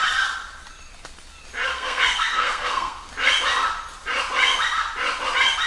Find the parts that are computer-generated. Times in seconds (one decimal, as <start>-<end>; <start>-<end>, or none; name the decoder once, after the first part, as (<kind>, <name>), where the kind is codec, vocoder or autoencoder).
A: 1.7-3.1 (codec, SNAC)